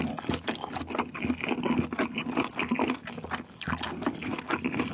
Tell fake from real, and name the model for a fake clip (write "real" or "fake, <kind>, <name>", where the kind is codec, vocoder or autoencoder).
real